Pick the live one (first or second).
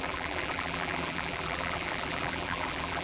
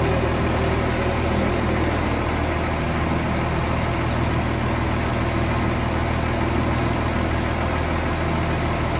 second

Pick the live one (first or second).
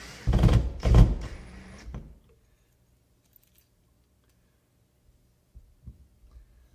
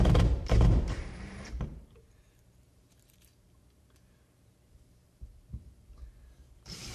first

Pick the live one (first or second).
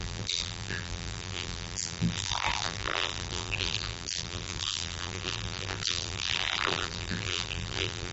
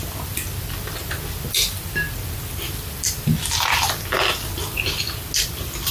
second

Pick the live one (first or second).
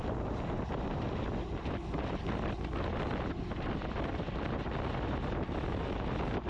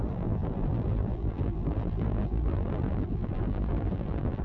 first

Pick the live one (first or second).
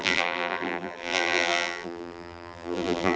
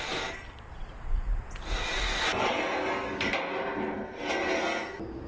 second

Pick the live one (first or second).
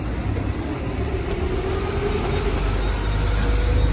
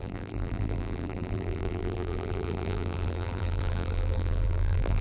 first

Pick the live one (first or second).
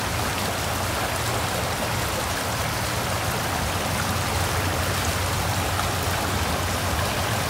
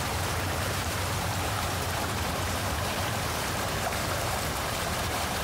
first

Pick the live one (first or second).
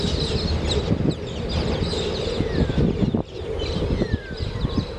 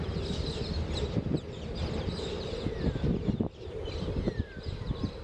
first